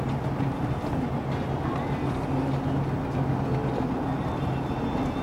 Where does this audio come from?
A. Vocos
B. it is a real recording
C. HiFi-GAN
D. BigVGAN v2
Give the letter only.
B